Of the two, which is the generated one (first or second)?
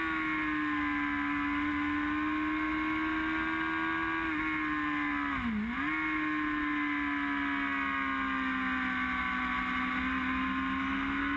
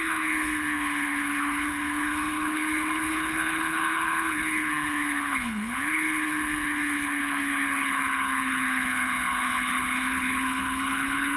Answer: second